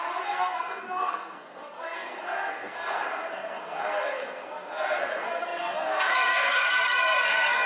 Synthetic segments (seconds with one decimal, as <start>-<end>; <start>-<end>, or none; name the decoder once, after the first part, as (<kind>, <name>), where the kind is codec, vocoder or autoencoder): 0.0-7.7 (codec, SNAC)